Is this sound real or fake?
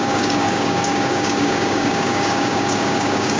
fake